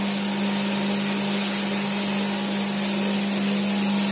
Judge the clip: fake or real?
real